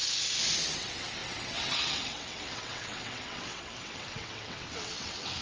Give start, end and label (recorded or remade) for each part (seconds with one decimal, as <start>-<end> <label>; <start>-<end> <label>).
0.0-0.7 recorded; 0.7-5.4 remade